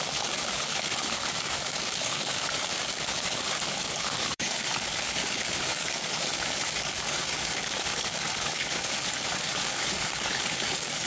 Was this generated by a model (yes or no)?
yes